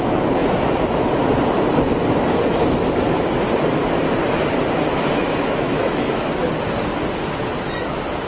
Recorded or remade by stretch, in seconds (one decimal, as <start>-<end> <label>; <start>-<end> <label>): 0.0-5.2 recorded; 5.2-6.6 remade; 6.6-8.3 recorded